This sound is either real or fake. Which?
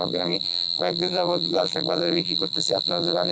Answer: fake